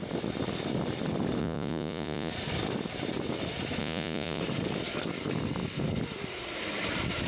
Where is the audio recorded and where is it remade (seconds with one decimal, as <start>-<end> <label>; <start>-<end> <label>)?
0.0-1.4 recorded; 1.4-2.3 remade; 2.3-3.8 recorded; 3.8-4.4 remade; 4.4-7.3 recorded